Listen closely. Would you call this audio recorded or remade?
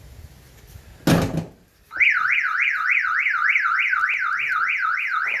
recorded